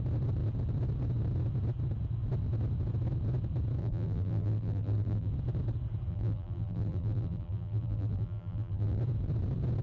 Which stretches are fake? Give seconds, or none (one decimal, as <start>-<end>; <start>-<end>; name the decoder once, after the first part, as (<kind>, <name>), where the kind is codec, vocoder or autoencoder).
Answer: 3.8-5.3 (vocoder, BigVGAN v2); 6.1-9.0